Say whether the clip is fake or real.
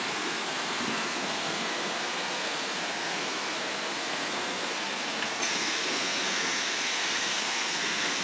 fake